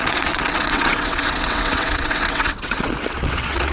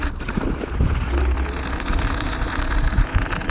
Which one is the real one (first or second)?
second